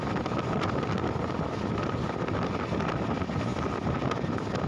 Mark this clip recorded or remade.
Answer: recorded